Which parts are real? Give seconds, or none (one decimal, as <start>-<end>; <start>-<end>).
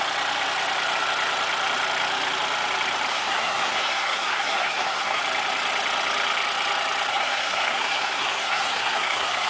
0.0-3.1; 5.2-7.1